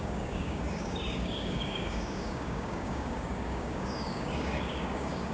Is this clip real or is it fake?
fake